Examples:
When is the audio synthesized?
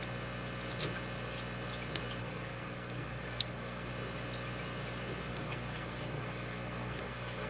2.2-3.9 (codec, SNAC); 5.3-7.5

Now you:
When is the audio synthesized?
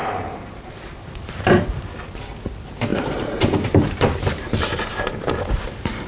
0.0-1.8 (vocoder, BigVGAN v2); 2.9-5.3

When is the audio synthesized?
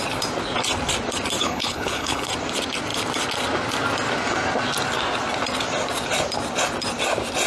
1.4-2.3 (codec, HILCodec)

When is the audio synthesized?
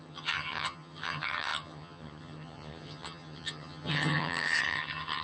0.0-5.2 (vocoder, HiFi-GAN)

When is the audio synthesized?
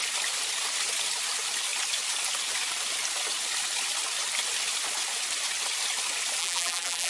6.4-7.1 (vocoder, BigVGAN v2)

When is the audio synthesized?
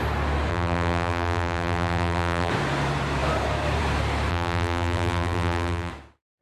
0.5-2.5 (vocoder, BigVGAN v2); 4.3-5.9